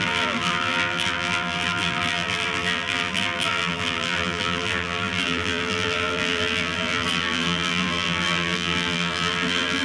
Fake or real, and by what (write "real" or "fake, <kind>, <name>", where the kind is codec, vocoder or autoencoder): fake, vocoder, BigVGAN v2